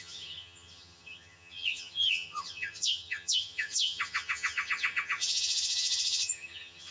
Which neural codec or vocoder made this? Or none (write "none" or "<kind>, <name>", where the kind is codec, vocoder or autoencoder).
vocoder, HiFi-GAN